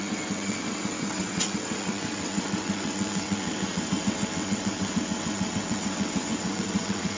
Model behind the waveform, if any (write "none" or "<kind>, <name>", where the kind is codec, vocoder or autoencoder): vocoder, WaveNeXt